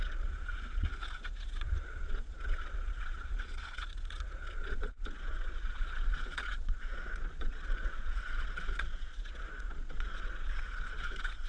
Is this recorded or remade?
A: remade